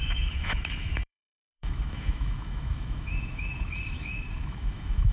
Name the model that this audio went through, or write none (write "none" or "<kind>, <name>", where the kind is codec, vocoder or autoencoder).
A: autoencoder, DAC-VAE